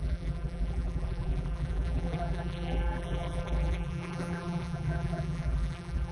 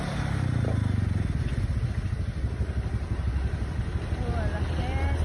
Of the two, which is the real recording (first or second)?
second